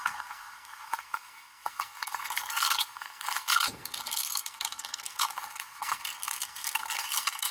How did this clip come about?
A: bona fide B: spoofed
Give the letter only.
B